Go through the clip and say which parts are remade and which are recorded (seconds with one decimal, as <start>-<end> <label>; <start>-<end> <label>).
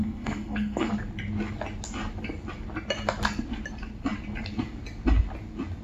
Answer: 0.0-0.9 remade; 0.9-5.8 recorded